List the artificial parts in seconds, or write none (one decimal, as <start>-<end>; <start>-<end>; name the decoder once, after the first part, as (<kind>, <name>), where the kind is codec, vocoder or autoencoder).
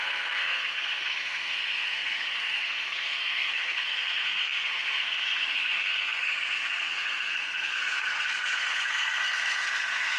0.0-10.2 (codec, SNAC)